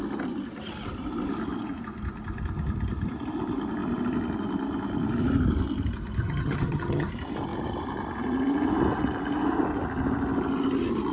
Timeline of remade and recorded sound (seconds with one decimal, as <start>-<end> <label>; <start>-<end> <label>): 0.0-6.2 recorded; 6.2-7.1 remade; 7.1-11.1 recorded